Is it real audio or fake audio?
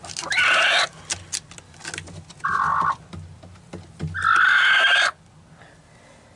real